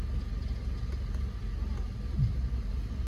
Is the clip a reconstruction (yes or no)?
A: no